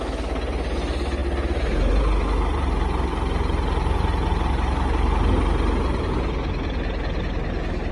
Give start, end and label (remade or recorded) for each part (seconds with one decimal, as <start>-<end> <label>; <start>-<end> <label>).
0.0-7.9 recorded